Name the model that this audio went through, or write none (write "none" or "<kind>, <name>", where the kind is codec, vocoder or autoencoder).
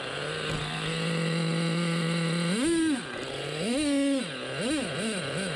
none